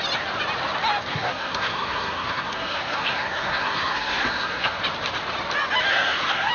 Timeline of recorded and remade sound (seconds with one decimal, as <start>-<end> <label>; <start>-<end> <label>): 0.0-1.1 recorded; 1.1-4.8 remade; 4.8-5.9 recorded; 5.9-6.5 remade